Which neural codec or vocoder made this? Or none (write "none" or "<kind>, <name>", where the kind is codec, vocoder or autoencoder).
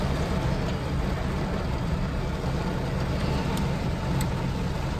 none